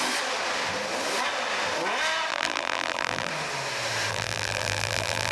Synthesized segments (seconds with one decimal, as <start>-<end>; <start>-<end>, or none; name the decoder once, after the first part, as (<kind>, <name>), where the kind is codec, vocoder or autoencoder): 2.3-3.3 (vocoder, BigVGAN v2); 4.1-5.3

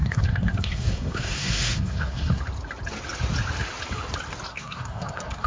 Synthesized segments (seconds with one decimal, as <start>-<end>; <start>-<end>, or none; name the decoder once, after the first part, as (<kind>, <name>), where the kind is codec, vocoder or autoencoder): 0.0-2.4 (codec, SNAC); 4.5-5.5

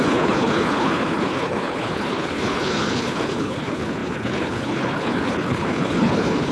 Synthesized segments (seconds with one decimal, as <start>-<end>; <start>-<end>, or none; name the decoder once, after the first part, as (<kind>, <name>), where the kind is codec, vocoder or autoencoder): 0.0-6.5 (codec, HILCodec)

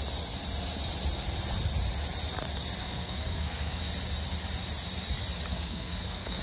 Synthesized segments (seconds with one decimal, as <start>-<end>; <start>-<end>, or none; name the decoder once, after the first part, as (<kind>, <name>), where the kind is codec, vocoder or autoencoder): 2.8-3.8 (codec, SNAC); 5.5-6.4

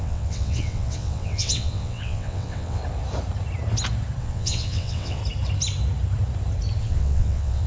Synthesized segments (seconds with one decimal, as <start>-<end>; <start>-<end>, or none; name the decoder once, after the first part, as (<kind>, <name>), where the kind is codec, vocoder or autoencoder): 0.0-2.8 (vocoder, WaveNeXt); 4.2-5.2; 6.8-7.7

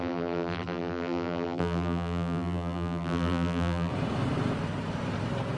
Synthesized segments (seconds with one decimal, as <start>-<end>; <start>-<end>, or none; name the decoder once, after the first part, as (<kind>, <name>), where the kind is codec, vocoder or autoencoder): 0.0-3.9 (vocoder, BigVGAN v2)

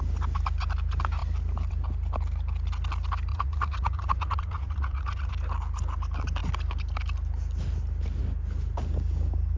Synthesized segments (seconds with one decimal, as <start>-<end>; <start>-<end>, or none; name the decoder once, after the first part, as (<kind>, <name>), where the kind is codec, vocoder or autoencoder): 3.3-5.3 (vocoder, Vocos)

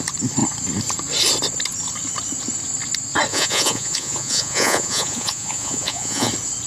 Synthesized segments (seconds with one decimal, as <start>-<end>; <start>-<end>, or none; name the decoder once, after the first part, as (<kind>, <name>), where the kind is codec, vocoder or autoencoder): 3.3-6.3 (vocoder, Vocos)